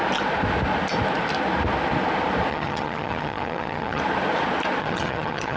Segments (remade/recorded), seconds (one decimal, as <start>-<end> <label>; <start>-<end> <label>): 0.0-2.5 recorded; 2.5-4.0 remade; 4.0-4.8 recorded; 4.8-5.6 remade